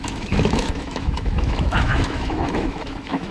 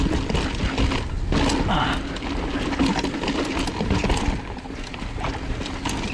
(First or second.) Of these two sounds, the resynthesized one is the first